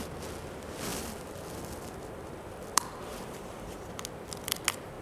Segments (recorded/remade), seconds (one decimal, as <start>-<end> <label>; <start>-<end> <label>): 0.0-0.9 recorded; 0.9-3.9 remade; 3.9-5.0 recorded